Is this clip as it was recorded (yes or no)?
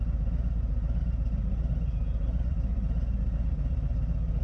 yes